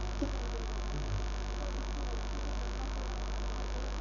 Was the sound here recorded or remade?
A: recorded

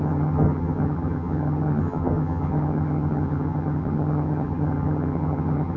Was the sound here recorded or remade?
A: remade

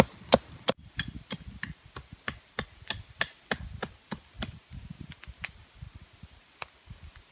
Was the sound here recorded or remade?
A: recorded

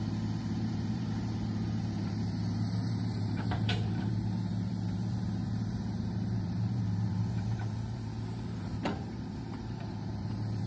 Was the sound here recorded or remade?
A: remade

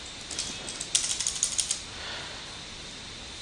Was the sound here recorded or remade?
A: recorded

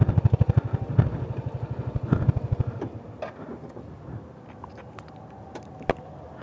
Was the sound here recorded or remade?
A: recorded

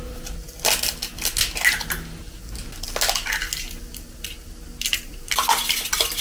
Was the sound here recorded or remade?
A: recorded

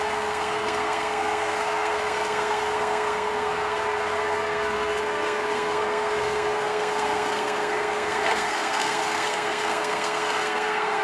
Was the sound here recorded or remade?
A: remade